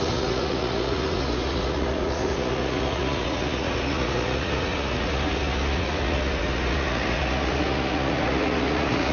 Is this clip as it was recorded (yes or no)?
no